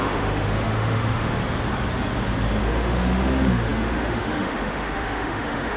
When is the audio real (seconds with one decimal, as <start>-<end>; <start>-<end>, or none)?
1.4-2.6